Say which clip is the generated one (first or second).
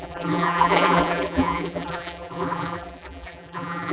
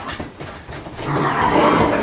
first